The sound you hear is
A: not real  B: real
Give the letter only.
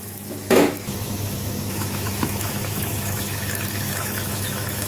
A